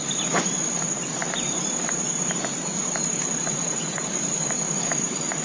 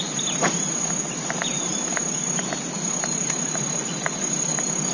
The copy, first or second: first